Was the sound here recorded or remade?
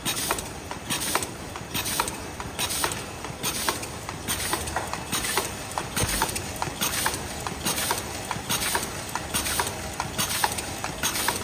remade